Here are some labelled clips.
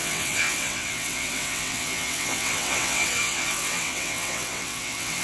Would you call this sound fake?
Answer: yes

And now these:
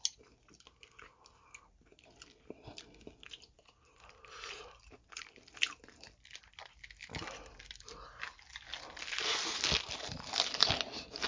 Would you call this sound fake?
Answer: no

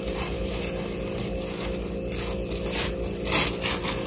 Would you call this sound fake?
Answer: no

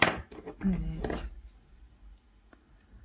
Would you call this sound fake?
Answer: no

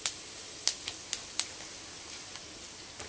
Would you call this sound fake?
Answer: no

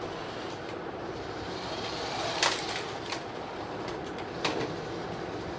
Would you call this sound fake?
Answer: yes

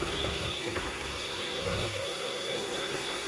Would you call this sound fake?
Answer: yes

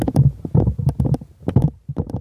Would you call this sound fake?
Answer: no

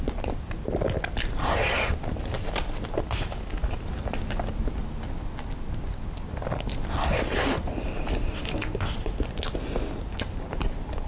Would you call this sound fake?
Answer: no